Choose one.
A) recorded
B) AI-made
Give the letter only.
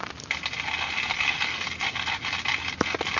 A